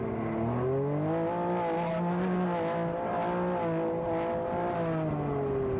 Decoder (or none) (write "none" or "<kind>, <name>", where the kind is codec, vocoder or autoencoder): none